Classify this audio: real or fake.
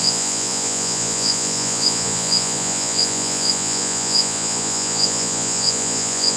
fake